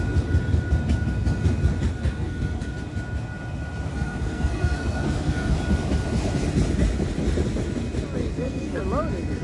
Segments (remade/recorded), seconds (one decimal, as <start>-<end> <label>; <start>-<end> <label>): 0.0-2.0 recorded; 2.0-2.7 remade; 2.7-3.9 recorded; 3.9-5.5 remade; 5.5-8.2 recorded; 8.2-8.8 remade; 8.8-9.4 recorded